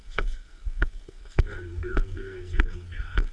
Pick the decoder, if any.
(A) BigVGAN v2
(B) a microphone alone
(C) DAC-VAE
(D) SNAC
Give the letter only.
D